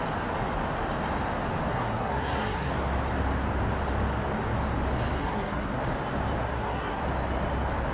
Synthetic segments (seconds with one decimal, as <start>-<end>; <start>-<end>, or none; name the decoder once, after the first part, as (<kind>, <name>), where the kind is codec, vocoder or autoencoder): 1.7-2.7 (codec, SNAC); 5.2-5.8; 6.4-7.0